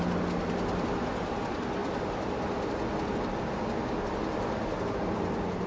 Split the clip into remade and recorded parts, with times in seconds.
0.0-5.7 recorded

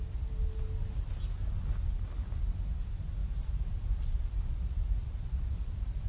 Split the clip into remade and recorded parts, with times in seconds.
0.0-3.2 recorded; 3.2-6.1 remade

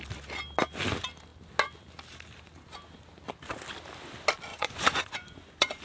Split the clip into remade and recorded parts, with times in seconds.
0.0-4.5 recorded; 4.5-5.8 remade

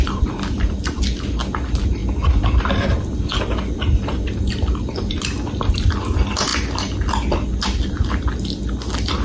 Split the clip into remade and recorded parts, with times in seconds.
0.0-9.2 recorded

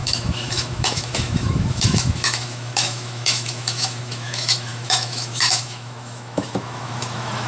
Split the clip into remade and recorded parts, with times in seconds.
0.0-7.5 remade

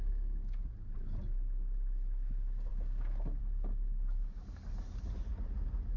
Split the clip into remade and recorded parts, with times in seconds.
0.0-6.0 recorded